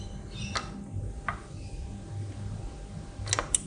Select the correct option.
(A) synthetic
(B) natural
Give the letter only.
B